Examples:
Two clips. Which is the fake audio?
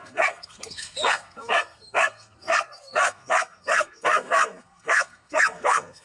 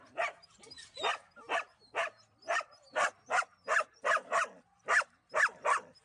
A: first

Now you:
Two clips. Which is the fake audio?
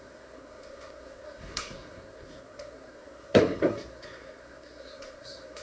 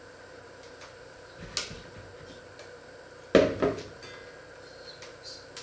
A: first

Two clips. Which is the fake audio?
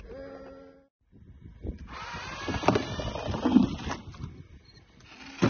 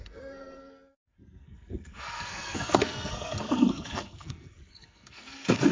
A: second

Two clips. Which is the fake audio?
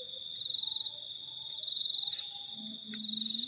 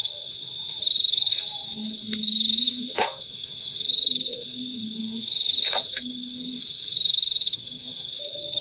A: second